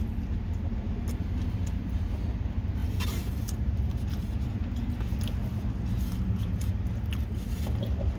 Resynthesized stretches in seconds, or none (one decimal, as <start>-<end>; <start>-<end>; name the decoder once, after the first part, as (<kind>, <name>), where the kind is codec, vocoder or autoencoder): 2.8-4.5 (vocoder, BigVGAN v2)